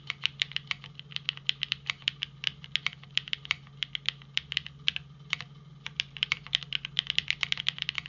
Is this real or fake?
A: real